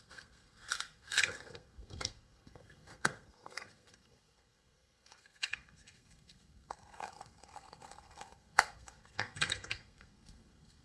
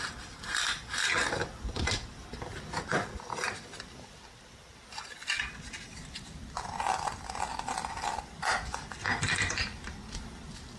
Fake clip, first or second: first